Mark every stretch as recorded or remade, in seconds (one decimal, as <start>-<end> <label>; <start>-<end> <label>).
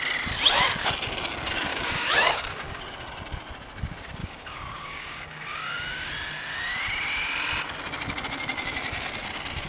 0.0-1.7 recorded; 1.7-2.8 remade; 2.8-4.2 recorded; 4.2-6.1 remade; 6.1-9.7 recorded